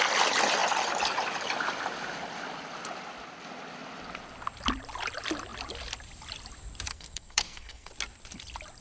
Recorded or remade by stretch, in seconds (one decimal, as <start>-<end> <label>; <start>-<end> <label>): 0.0-6.9 recorded; 6.9-7.9 remade; 7.9-8.8 recorded